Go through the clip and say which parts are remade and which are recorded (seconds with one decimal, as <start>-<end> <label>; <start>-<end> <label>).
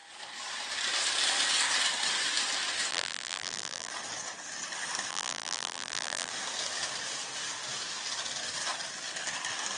0.0-2.9 recorded; 2.9-3.9 remade; 3.9-5.1 recorded; 5.1-6.3 remade; 6.3-9.8 recorded